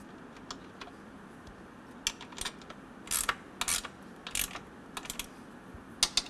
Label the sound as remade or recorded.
recorded